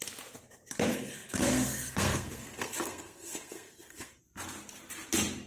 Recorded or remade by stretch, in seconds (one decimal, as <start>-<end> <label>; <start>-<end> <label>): 0.0-0.9 recorded; 0.9-4.2 remade; 4.2-5.5 recorded